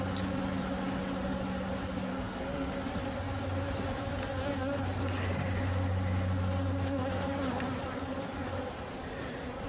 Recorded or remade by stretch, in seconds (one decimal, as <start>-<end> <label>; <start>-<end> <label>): 0.0-2.1 recorded; 2.1-2.7 remade; 2.7-9.7 recorded